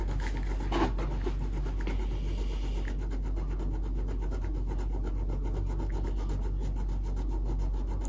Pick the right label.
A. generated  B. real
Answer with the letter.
B